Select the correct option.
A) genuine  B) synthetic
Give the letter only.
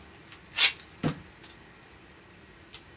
A